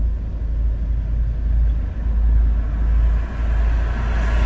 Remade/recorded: recorded